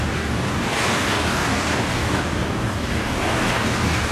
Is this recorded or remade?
remade